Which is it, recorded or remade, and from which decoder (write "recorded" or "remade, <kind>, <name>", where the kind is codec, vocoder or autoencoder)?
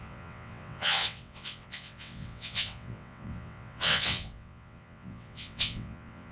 remade, vocoder, WaveNeXt